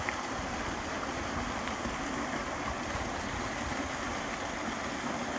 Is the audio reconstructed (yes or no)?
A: no